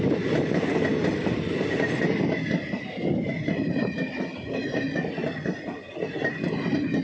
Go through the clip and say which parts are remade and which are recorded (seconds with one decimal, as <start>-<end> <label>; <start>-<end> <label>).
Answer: 0.0-7.0 recorded